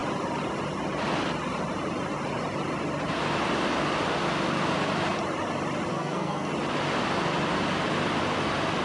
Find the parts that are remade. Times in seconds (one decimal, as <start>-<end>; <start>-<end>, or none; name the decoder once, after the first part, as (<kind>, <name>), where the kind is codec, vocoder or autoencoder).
5.9-6.5 (codec, SNAC)